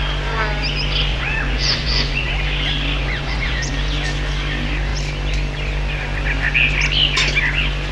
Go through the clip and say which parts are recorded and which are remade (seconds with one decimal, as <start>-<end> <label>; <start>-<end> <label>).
0.0-1.1 recorded; 1.1-2.3 remade; 2.3-3.0 recorded; 3.0-3.7 remade; 3.7-7.9 recorded